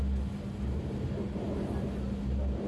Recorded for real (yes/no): yes